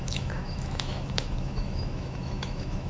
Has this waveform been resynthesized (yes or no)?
yes